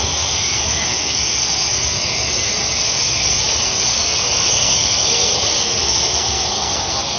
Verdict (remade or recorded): remade